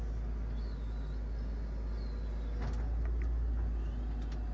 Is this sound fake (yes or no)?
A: no